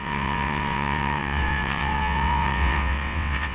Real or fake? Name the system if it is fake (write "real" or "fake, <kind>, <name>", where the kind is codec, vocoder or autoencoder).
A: fake, vocoder, WaveNeXt